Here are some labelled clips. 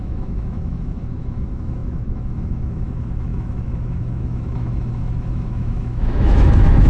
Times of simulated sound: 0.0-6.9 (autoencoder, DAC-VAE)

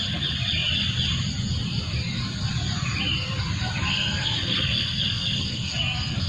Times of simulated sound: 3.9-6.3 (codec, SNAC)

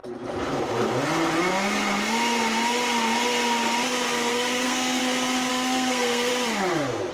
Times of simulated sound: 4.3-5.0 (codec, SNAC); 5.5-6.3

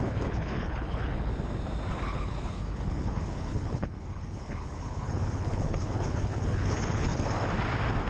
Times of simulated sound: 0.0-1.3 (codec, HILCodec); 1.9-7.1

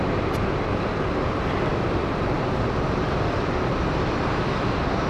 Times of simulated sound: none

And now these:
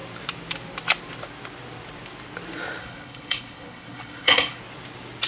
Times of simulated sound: 2.8-4.6 (codec, HILCodec)